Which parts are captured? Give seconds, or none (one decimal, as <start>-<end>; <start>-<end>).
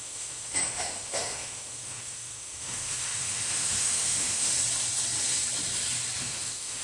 4.5-6.2